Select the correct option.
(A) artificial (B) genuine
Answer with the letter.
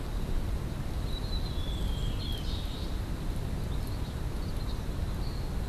B